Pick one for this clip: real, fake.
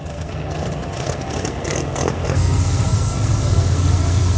fake